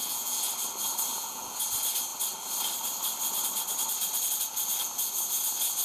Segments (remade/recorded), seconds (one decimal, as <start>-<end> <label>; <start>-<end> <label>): 0.0-0.5 remade; 0.5-1.1 recorded; 1.1-1.6 remade; 1.6-5.8 recorded